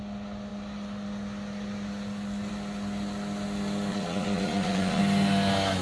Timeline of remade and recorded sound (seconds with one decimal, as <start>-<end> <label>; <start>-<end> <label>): 0.0-3.9 recorded; 3.9-5.0 remade; 5.0-5.8 recorded